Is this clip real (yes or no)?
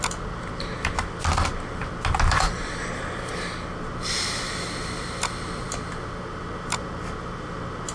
yes